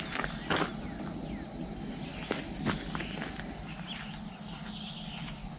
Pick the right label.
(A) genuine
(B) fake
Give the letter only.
A